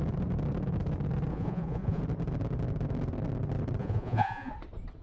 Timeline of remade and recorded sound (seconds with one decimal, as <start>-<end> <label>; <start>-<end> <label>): 0.0-1.3 recorded; 1.3-2.0 remade; 2.0-3.8 recorded; 3.8-4.5 remade; 4.5-5.0 recorded